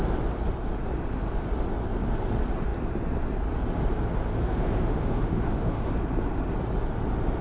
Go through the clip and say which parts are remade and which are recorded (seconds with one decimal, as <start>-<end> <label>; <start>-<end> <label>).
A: 0.0-4.4 recorded; 4.4-5.9 remade; 5.9-7.4 recorded